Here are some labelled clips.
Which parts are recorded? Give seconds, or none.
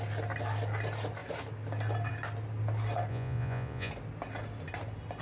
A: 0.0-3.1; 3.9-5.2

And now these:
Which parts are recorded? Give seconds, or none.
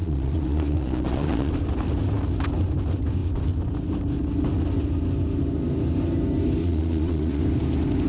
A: 1.5-6.6; 7.4-8.1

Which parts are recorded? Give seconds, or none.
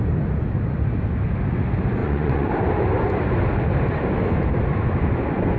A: 0.0-2.0; 2.5-5.6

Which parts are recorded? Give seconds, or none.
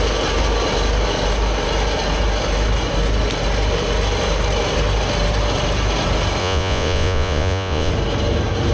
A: 0.0-6.4; 7.9-8.7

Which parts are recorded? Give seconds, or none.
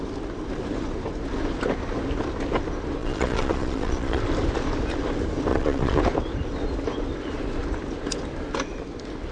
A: 0.0-3.0; 4.2-5.5; 6.0-9.3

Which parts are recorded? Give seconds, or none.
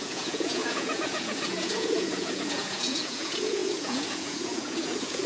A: none